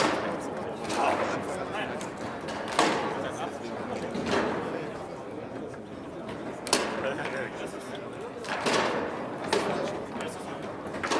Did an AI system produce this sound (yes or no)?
no